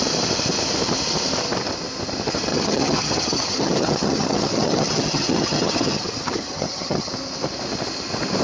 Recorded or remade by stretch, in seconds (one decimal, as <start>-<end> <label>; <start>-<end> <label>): 0.0-2.5 recorded; 2.5-7.1 remade; 7.1-8.4 recorded